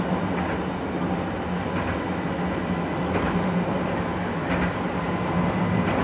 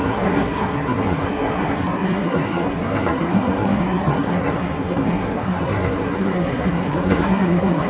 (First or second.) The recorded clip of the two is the first